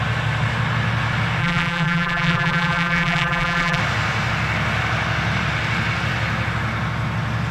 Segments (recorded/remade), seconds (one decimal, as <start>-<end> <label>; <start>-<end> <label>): 0.0-1.4 recorded; 1.4-3.8 remade; 3.8-7.5 recorded